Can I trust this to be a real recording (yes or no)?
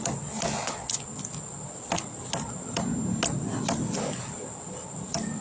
yes